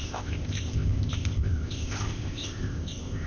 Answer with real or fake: fake